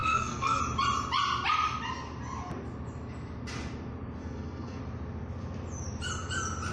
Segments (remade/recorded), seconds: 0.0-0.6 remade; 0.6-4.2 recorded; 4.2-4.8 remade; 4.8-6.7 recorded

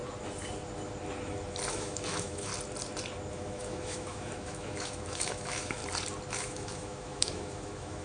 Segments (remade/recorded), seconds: 0.0-1.7 recorded; 1.7-2.5 remade; 2.5-3.3 recorded; 3.3-5.8 remade; 5.8-6.3 recorded; 6.3-8.0 remade

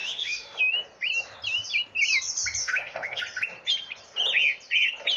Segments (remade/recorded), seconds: 0.0-0.6 remade; 0.6-2.6 recorded; 2.6-3.2 remade; 3.2-5.2 recorded

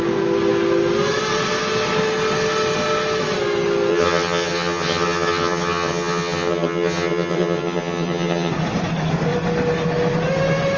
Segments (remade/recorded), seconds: 0.0-3.9 recorded; 3.9-8.5 remade; 8.5-10.8 recorded

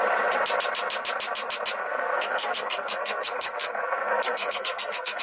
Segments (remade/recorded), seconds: 0.0-1.8 recorded; 1.8-5.2 remade

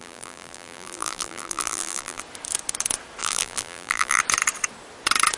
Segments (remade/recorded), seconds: 0.0-2.2 remade; 2.2-3.2 recorded; 3.2-4.2 remade; 4.2-5.4 recorded

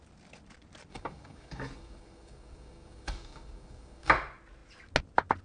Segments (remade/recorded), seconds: 0.0-0.9 recorded; 0.9-4.1 remade; 4.1-5.4 recorded